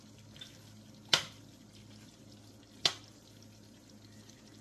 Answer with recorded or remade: recorded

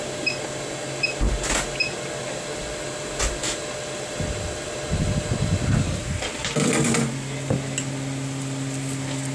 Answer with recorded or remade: recorded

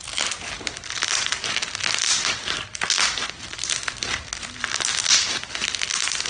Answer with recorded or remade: recorded